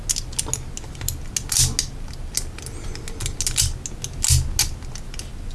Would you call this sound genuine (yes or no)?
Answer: yes